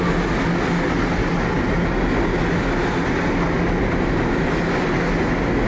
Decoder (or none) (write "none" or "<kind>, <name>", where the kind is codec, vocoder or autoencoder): none